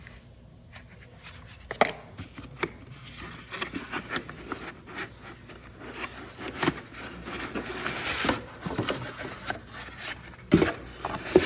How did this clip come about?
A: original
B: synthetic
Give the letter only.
A